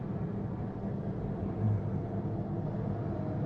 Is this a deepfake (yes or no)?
no